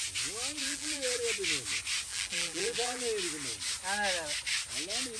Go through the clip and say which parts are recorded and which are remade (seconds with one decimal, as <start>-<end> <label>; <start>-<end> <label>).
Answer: 0.0-0.6 recorded; 0.6-1.2 remade; 1.2-2.1 recorded; 2.1-3.0 remade; 3.0-5.2 recorded